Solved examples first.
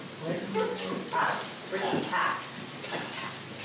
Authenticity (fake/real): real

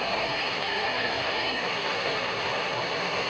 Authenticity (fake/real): fake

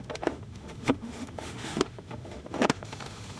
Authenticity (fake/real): fake